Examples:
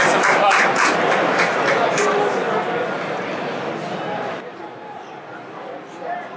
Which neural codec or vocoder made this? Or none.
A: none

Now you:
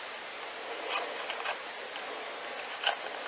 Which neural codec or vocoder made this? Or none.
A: none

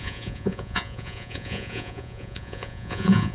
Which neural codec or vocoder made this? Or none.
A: vocoder, Vocos